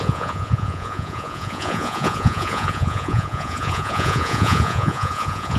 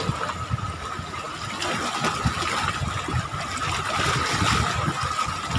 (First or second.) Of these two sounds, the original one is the second